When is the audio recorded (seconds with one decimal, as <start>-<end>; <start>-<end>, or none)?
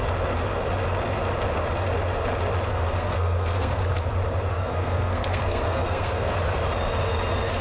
0.0-2.7; 3.8-4.5; 6.3-7.6